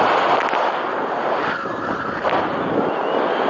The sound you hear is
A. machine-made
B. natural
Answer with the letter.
B